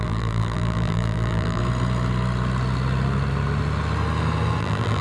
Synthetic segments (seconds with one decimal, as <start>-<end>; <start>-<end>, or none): 0.0-1.6; 4.6-5.0